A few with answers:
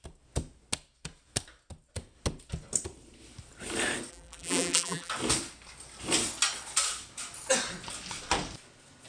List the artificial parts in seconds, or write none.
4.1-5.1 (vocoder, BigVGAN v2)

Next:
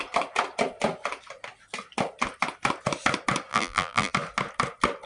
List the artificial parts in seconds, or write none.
3.5-4.1 (vocoder, BigVGAN v2)

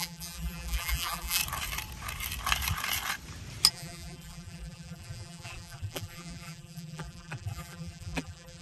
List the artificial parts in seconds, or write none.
0.0-1.4 (vocoder, BigVGAN v2); 3.7-8.6